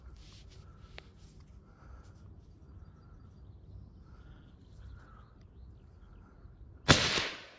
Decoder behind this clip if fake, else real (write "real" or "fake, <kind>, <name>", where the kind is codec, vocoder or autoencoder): real